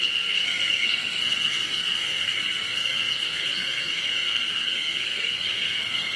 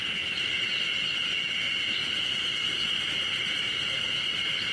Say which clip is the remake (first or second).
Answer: first